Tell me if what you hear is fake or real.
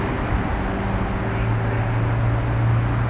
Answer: real